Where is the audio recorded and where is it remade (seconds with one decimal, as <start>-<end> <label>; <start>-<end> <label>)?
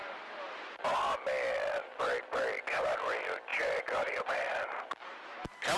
0.0-5.8 recorded